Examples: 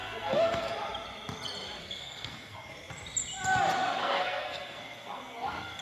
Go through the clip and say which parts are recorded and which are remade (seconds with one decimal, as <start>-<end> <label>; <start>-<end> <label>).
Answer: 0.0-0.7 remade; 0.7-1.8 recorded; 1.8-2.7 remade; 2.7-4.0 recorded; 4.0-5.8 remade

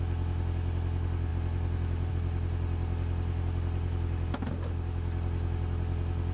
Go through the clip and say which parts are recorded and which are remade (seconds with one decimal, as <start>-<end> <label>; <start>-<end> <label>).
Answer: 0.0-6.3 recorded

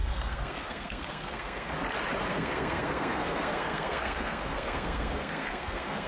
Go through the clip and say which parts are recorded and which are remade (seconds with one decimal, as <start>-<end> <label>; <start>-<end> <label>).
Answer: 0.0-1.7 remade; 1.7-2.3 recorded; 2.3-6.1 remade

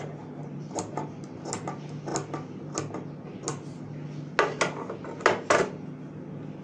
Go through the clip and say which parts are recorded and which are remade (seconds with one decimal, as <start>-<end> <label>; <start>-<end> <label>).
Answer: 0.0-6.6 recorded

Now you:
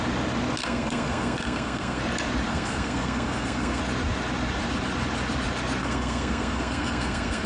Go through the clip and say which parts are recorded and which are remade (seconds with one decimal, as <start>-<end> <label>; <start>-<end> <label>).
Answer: 0.0-0.6 recorded; 0.6-2.0 remade; 2.0-2.5 recorded; 2.5-3.8 remade; 3.8-5.8 recorded; 5.8-7.5 remade